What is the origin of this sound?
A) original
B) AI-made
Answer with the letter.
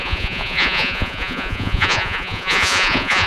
B